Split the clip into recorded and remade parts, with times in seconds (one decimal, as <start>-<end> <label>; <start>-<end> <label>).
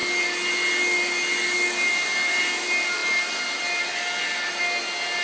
0.0-5.2 recorded